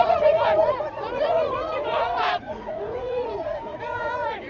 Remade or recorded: remade